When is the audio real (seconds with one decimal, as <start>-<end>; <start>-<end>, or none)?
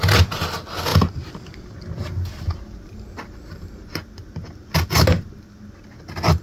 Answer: 0.0-6.4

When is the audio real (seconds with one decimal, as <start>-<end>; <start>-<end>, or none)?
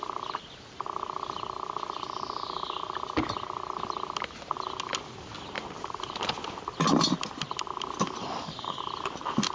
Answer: 0.0-8.2; 8.8-9.5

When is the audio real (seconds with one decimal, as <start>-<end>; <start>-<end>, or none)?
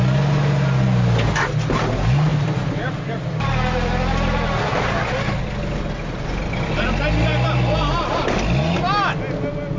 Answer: 0.0-9.8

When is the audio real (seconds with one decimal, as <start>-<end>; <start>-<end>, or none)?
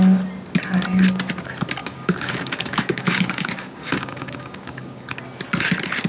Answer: 0.0-1.8; 5.2-6.1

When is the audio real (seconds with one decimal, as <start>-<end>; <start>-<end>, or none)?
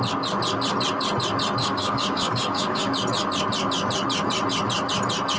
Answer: 0.0-1.6; 2.9-5.4